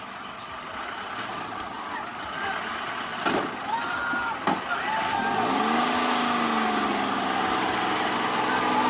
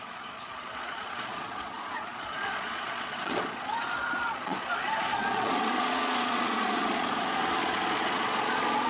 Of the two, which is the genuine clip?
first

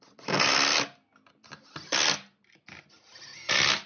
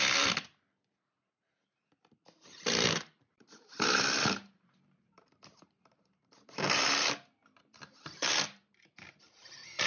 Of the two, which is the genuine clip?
first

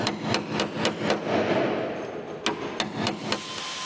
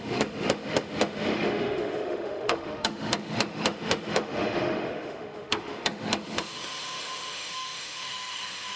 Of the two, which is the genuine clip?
first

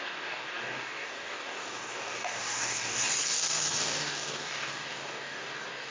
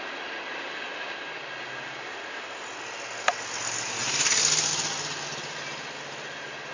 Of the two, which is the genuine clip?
second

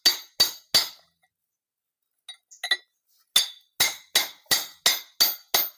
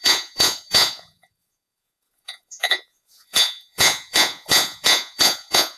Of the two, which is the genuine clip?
first